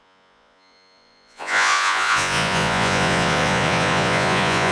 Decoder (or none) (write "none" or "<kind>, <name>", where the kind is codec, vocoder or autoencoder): vocoder, Vocos